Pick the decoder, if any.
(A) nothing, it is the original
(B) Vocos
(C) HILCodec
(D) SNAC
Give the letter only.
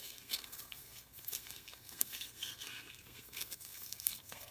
D